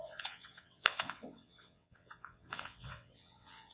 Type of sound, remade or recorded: remade